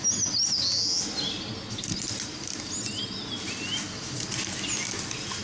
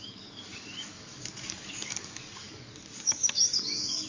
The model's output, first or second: second